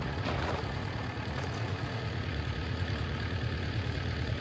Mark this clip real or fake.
fake